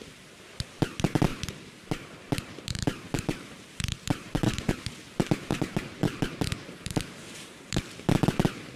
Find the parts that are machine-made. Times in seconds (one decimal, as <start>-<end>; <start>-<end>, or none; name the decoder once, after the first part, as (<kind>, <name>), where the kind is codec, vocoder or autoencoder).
1.3-4.7 (vocoder, BigVGAN v2); 5.5-7.8